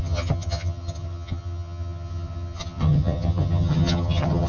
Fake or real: fake